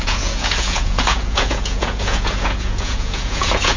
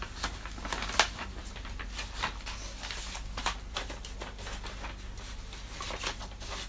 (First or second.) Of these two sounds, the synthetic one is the first